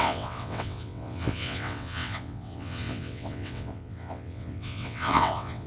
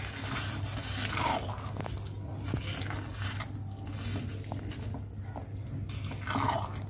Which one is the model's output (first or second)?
first